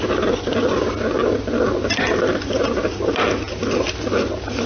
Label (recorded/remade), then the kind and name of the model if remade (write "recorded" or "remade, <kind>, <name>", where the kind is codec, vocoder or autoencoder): recorded